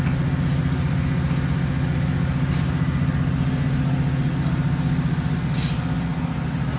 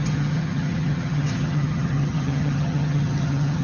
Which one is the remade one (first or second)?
second